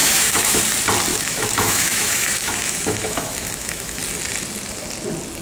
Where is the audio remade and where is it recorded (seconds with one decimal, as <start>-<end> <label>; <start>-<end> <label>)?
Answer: 0.0-0.6 remade; 0.6-1.1 recorded; 1.1-4.0 remade; 4.0-5.4 recorded